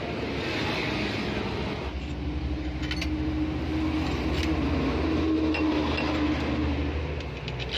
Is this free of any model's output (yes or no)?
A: yes